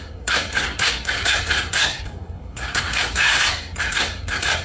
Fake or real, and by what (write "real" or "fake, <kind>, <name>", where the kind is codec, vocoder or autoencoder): fake, codec, SNAC